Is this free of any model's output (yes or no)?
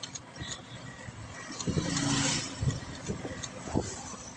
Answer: yes